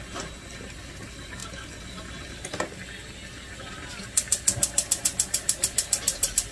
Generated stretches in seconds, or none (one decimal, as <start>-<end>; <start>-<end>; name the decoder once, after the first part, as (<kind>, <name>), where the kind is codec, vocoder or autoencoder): none